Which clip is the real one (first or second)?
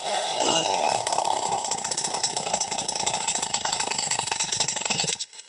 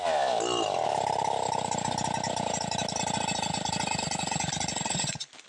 second